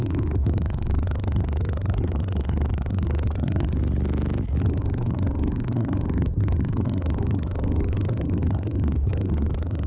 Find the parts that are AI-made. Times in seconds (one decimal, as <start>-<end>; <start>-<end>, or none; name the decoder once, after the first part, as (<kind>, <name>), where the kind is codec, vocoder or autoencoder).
0.0-3.8 (codec, SNAC); 4.6-9.9